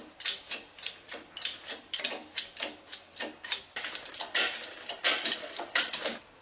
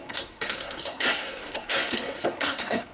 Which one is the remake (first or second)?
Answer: second